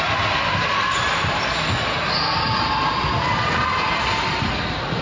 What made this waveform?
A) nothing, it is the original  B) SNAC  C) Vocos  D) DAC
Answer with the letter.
A